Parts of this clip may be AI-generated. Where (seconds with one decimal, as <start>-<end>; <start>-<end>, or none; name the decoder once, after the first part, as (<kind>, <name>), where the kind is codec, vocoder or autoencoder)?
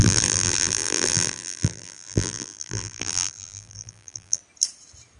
0.0-4.4 (vocoder, BigVGAN v2)